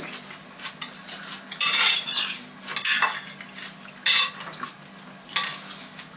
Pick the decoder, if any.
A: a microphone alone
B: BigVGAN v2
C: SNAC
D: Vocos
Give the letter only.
A